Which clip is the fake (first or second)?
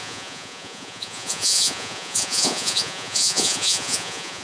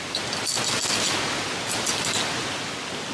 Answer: first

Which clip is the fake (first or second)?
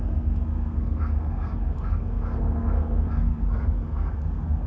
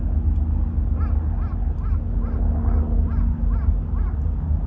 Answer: first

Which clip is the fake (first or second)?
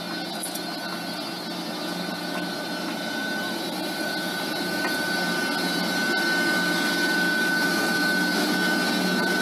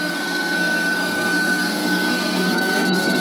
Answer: second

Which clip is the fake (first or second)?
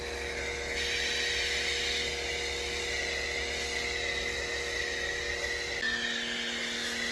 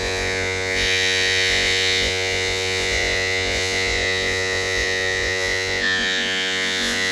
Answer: second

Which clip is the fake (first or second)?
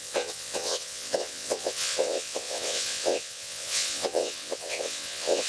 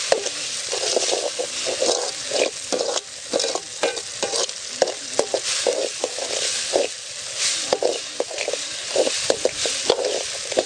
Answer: first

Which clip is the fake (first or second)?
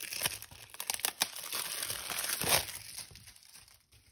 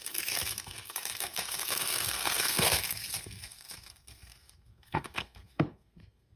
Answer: second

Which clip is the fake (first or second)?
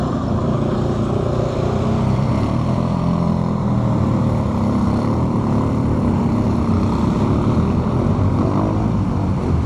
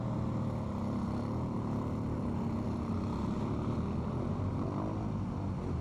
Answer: first